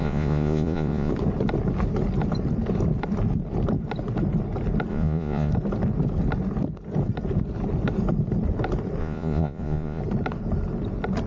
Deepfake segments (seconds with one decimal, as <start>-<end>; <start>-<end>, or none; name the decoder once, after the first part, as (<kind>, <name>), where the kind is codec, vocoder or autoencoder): 0.0-1.1 (vocoder, Vocos); 4.9-5.5; 9.0-10.0